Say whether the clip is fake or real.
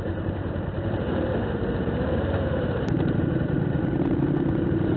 fake